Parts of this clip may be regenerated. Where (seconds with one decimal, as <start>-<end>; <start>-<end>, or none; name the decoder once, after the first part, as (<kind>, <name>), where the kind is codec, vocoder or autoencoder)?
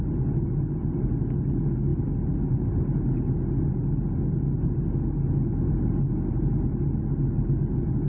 none